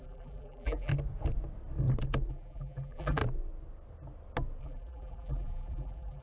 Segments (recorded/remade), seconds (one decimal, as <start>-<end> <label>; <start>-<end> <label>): 0.0-0.9 remade; 0.9-2.3 recorded; 2.3-3.2 remade; 3.2-4.6 recorded; 4.6-6.2 remade